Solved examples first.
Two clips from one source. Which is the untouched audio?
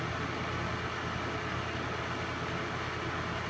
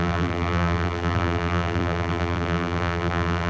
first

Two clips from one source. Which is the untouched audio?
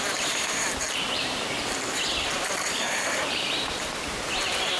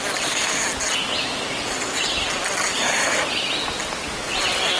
second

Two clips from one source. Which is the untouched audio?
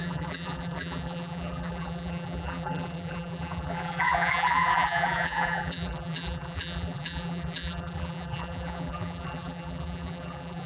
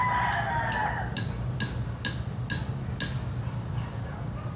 second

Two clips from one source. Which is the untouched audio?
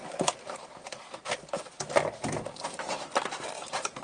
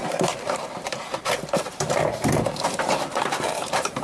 first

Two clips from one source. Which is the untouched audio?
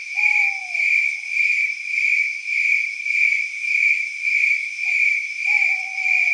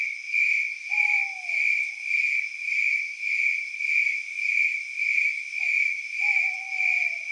second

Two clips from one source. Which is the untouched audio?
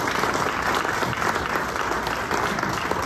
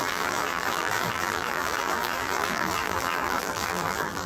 first